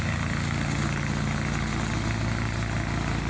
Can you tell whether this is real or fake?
real